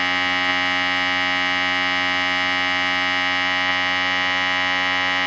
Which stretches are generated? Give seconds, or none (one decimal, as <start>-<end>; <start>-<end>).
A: none